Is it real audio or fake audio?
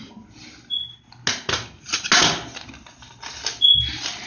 real